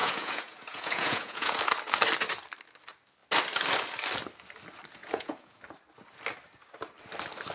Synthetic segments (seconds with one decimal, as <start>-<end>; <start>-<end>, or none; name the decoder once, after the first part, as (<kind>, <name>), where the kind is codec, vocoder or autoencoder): 0.0-1.6 (vocoder, Vocos); 5.0-5.6